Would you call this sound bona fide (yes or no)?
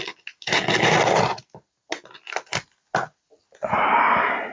yes